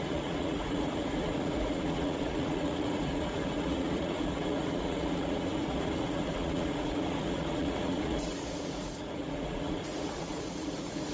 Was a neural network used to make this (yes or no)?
yes